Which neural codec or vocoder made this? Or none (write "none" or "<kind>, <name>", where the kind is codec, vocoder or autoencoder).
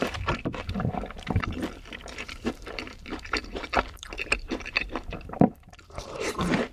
vocoder, BigVGAN v2